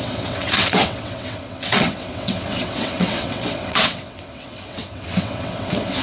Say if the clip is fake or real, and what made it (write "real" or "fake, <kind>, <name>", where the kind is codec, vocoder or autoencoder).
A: fake, vocoder, WaveNeXt